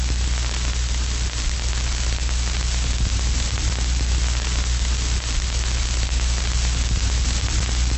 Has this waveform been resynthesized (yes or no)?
no